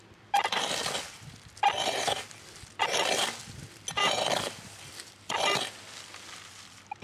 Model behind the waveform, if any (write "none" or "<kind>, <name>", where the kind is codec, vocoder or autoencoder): none